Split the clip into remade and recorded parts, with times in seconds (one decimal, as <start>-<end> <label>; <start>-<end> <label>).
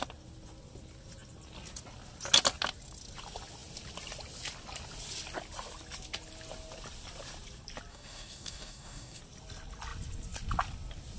0.0-7.9 recorded; 7.9-9.2 remade; 9.2-11.2 recorded